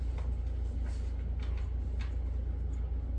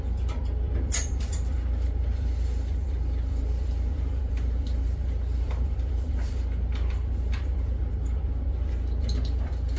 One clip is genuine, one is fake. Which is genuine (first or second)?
first